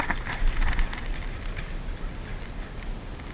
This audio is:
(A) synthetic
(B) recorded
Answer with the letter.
B